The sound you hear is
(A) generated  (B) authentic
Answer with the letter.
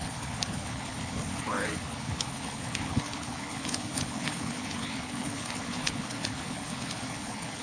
A